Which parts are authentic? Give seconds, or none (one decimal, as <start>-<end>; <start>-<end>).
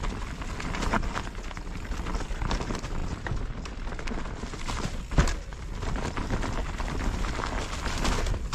0.0-3.0; 5.0-5.5; 6.3-8.5